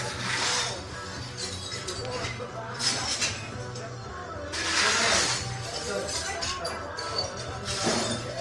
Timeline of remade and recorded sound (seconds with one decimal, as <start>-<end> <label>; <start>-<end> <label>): 0.0-1.7 recorded; 1.7-3.2 remade; 3.2-8.4 recorded